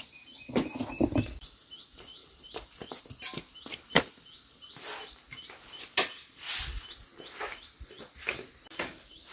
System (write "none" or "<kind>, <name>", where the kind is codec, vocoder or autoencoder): none